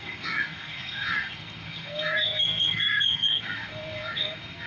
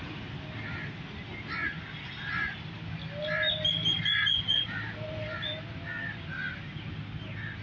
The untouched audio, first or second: second